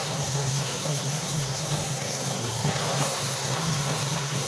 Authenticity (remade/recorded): remade